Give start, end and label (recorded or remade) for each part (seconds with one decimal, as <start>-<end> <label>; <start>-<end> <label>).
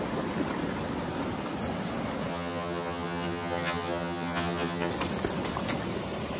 0.0-2.3 recorded; 2.3-4.9 remade; 4.9-6.4 recorded